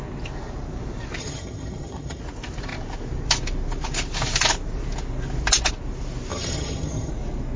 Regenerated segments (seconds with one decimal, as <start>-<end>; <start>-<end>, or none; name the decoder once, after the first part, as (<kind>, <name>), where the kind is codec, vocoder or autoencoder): 1.2-2.2 (vocoder, HiFi-GAN); 6.3-7.1